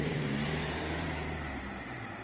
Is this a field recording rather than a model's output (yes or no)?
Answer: no